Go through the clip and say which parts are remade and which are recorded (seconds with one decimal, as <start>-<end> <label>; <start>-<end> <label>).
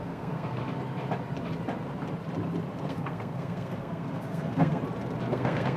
0.0-0.6 remade; 0.6-2.8 recorded; 2.8-4.8 remade; 4.8-5.3 recorded; 5.3-5.8 remade